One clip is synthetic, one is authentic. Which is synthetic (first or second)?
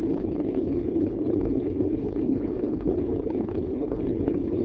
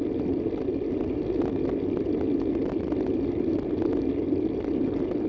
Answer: first